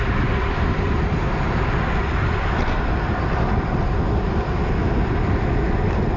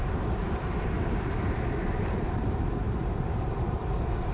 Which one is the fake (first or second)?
second